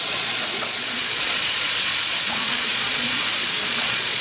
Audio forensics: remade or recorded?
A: remade